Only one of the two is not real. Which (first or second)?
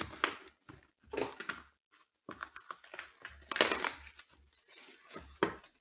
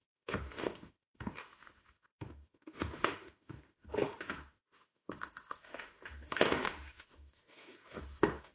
second